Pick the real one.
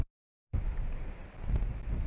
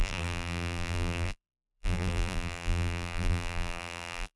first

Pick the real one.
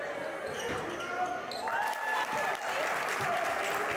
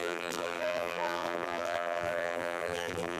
first